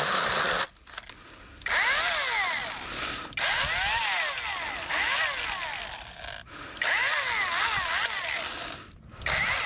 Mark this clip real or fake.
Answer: real